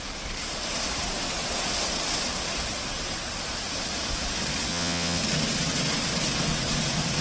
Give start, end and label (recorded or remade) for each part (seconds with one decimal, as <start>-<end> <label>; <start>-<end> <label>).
0.0-4.7 recorded; 4.7-5.2 remade; 5.2-7.2 recorded